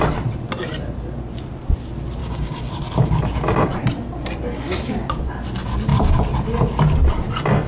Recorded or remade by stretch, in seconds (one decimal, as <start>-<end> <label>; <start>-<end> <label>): 0.0-2.2 recorded; 2.2-2.7 remade; 2.7-7.7 recorded